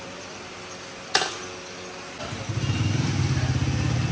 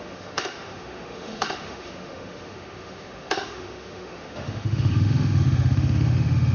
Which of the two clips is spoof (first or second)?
second